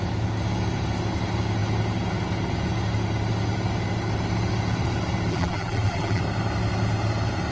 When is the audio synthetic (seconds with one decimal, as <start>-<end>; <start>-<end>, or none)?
5.3-6.2